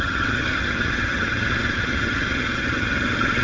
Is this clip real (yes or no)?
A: no